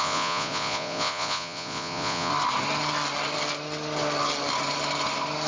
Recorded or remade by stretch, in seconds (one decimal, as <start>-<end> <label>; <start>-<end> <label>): 0.0-2.3 remade; 2.3-5.5 recorded

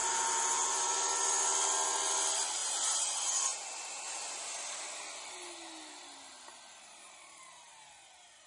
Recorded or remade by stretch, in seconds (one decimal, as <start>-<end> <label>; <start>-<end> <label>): 0.0-0.9 remade; 0.9-2.6 recorded; 2.6-3.1 remade; 3.1-8.5 recorded

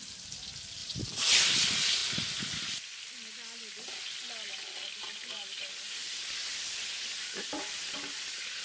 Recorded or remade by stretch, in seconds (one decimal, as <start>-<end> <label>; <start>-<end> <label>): 0.0-0.8 recorded; 0.8-1.4 remade; 1.4-6.0 recorded; 6.0-6.8 remade; 6.8-7.2 recorded; 7.2-7.9 remade; 7.9-8.6 recorded